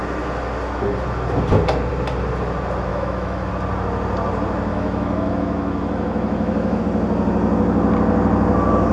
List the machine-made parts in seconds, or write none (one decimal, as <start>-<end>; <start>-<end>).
2.9-3.5; 4.7-6.8